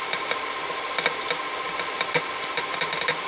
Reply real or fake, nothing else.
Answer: real